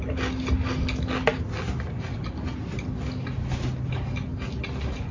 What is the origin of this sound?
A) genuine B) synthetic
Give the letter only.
A